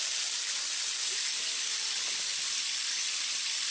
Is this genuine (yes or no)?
yes